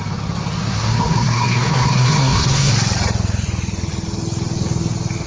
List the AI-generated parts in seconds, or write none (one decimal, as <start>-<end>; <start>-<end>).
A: 0.6-2.7